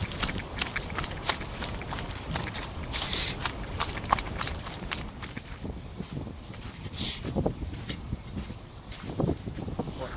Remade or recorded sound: recorded